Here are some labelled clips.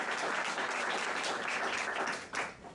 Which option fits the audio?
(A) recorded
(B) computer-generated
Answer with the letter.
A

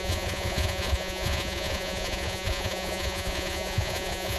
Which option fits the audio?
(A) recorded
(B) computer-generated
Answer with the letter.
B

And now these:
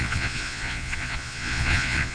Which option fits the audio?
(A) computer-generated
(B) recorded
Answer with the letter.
A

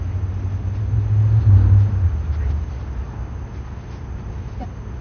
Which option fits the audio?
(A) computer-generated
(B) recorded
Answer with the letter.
B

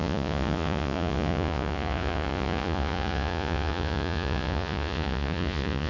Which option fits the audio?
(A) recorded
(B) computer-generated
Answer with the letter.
B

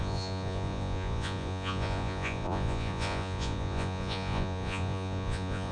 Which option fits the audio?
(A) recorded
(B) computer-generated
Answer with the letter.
B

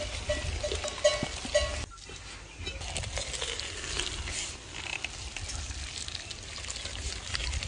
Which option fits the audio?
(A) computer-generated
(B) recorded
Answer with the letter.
B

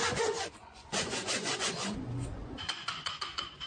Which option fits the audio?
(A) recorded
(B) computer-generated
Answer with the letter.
B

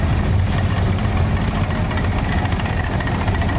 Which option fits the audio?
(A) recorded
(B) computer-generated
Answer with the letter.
A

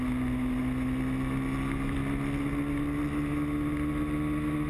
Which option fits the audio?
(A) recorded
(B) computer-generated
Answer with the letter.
A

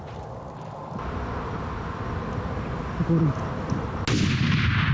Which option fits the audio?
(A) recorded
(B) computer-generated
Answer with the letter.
A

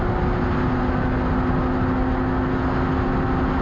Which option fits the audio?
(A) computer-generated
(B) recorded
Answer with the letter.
B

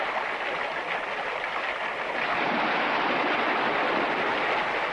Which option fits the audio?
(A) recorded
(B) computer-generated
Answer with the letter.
A